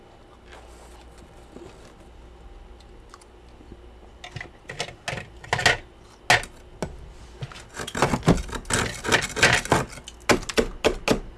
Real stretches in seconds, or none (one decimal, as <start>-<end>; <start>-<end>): 0.0-11.4